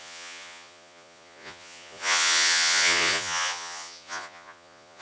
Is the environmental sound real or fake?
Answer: fake